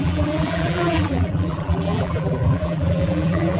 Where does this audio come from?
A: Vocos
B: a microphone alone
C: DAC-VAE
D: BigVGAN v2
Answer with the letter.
D